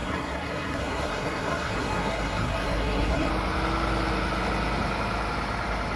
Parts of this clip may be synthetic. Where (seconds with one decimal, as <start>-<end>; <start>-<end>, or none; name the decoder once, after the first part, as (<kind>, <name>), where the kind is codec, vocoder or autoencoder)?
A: 0.0-3.3 (codec, SNAC)